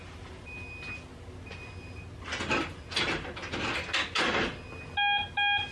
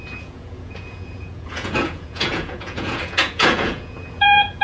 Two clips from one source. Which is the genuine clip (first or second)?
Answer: first